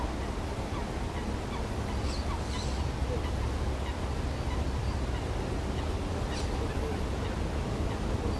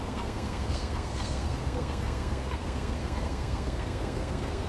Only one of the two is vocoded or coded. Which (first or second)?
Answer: second